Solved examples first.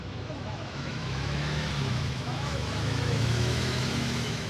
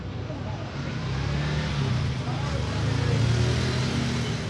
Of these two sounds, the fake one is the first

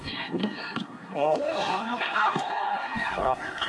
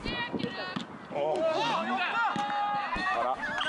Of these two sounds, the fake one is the first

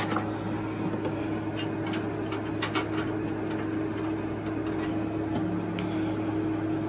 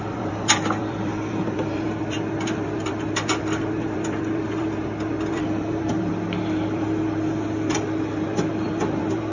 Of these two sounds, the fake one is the second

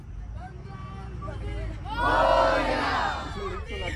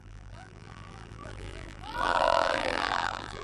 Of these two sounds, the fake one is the second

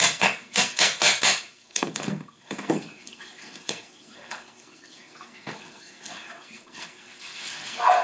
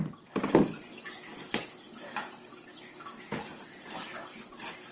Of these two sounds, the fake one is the first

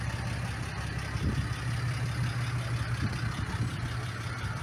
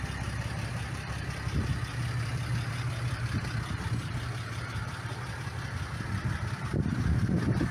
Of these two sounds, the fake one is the second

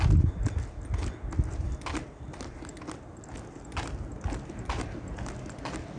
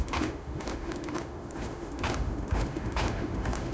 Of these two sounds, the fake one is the second